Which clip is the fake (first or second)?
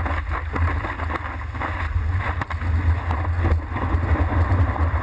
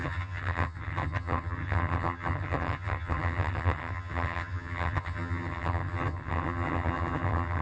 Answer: second